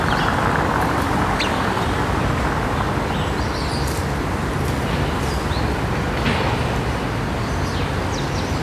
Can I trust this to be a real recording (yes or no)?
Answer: yes